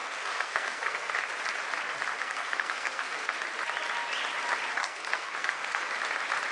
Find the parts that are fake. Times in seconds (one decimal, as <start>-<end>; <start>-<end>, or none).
0.0-1.1; 2.2-3.3; 4.8-5.9